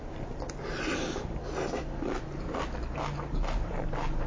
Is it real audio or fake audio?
real